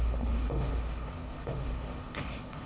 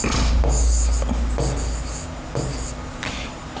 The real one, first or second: second